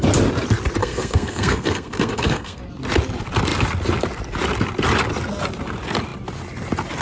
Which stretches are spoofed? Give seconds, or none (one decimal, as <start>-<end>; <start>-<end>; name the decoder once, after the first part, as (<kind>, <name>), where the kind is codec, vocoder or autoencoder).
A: 0.8-2.6 (codec, SNAC)

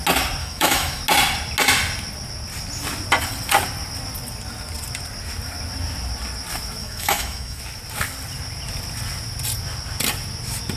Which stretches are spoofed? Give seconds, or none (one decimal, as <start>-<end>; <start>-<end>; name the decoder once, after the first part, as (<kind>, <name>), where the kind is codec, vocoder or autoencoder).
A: 0.4-1.0 (autoencoder, DAC-VAE); 6.8-7.6